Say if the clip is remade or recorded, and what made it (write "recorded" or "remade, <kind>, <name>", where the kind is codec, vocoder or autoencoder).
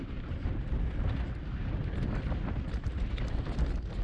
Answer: recorded